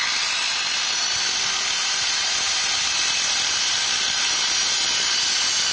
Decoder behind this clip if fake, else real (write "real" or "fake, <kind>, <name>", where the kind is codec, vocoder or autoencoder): real